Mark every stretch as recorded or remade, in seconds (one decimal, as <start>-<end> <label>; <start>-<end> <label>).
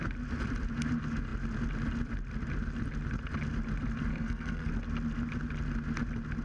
0.0-4.1 recorded; 4.1-4.7 remade; 4.7-6.4 recorded